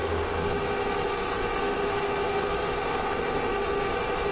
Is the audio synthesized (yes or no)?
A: yes